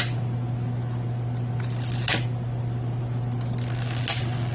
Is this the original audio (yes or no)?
yes